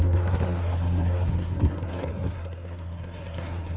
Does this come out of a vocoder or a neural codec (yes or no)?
yes